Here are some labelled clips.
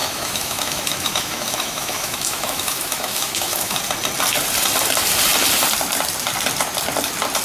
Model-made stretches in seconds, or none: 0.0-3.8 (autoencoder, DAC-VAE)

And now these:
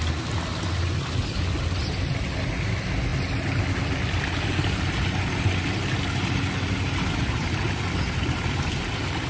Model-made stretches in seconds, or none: none

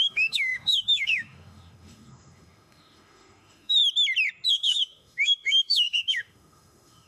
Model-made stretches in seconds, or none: 0.0-3.8 (autoencoder, DAC-VAE); 4.5-7.1

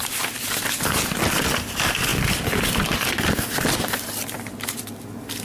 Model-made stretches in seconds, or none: none

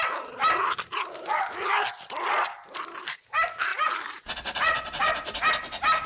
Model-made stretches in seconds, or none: none